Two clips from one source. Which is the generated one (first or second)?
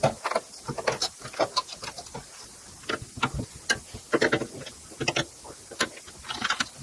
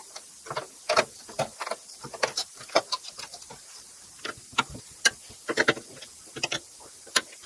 second